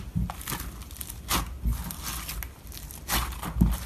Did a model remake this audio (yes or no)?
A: no